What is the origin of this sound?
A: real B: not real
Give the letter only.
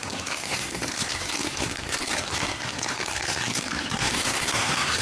B